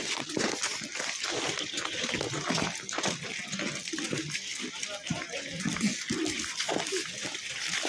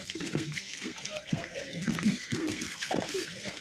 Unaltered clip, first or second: first